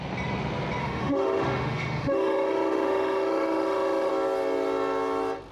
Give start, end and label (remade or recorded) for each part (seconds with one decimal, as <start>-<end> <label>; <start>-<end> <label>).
0.0-0.8 recorded; 0.8-4.1 remade; 4.1-5.5 recorded